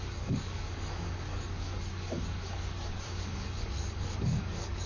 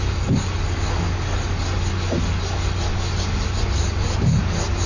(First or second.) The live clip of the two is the second